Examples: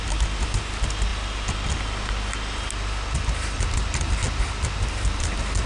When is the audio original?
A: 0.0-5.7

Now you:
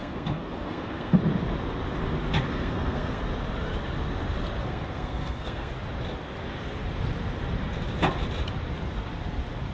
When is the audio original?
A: 1.2-2.5; 3.2-4.6; 5.7-9.7

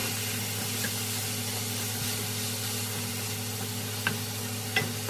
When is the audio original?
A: 0.0-5.1